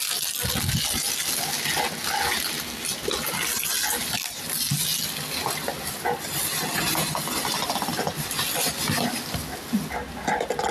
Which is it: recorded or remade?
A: recorded